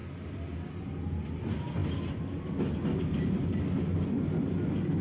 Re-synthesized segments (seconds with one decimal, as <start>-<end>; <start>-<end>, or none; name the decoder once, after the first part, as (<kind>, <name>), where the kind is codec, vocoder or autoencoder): none